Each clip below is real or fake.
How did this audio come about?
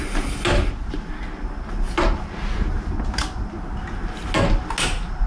real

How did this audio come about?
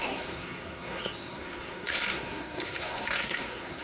fake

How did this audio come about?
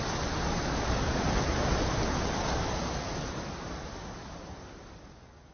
real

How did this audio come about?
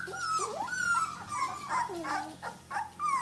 real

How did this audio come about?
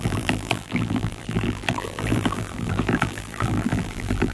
fake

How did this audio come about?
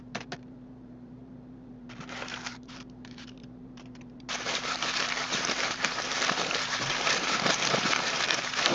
fake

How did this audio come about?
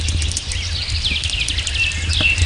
real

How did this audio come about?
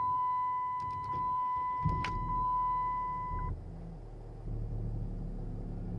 real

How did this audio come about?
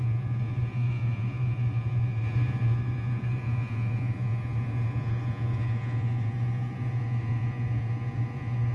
fake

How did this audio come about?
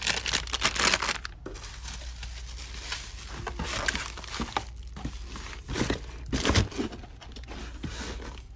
real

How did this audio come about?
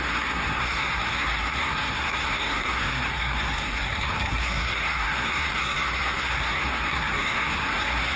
fake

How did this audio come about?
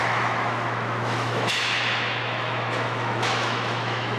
fake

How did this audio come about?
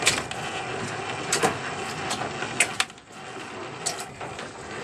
real